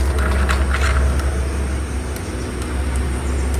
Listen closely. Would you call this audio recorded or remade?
recorded